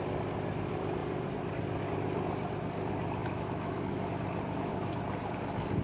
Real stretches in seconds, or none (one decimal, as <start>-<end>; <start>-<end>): 0.0-3.2; 4.1-5.8